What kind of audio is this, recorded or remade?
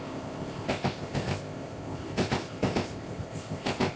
remade